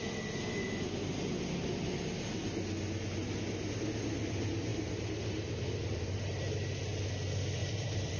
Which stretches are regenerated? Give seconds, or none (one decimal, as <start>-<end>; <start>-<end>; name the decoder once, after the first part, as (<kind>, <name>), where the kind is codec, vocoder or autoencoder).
4.7-6.8 (vocoder, BigVGAN v2); 7.6-8.2

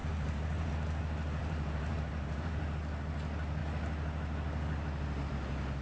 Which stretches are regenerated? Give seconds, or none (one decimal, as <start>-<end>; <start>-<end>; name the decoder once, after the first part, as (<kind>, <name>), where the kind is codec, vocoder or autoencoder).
0.0-0.7 (vocoder, BigVGAN v2); 1.4-2.6

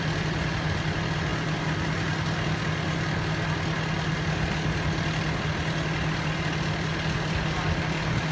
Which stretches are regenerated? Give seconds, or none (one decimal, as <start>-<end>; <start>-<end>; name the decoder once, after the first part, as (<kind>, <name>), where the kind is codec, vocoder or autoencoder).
none

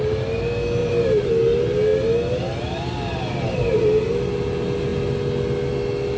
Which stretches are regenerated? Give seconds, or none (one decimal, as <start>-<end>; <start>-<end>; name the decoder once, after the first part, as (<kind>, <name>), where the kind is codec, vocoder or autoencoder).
0.8-1.3 (vocoder, BigVGAN v2)

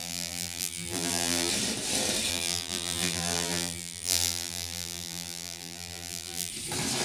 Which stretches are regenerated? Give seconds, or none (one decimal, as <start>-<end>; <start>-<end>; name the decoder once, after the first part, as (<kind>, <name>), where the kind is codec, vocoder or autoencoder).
0.0-1.5 (vocoder, BigVGAN v2); 2.3-6.5